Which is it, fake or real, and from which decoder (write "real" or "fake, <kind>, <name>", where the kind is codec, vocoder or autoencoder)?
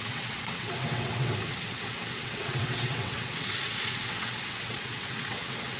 fake, vocoder, WaveNeXt